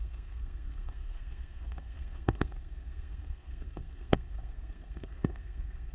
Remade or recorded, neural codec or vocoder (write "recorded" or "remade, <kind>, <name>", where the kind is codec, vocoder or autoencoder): remade, codec, SNAC